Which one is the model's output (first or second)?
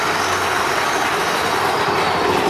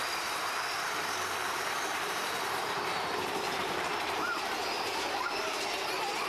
second